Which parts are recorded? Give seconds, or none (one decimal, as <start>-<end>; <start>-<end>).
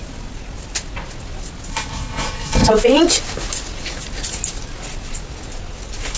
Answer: 0.0-1.7; 2.7-6.2